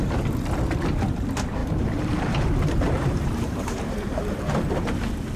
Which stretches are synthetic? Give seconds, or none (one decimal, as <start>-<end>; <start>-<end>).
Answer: 1.6-4.8